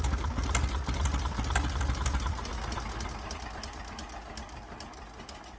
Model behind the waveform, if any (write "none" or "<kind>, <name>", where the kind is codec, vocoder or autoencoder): none